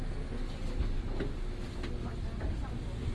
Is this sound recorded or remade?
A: recorded